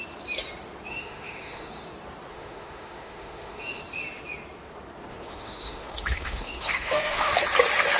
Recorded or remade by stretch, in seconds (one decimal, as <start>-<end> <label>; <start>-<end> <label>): 0.0-0.9 recorded; 0.9-1.7 remade; 1.7-2.3 recorded; 2.3-3.8 remade; 3.8-5.1 recorded; 5.1-7.3 remade; 7.3-8.0 recorded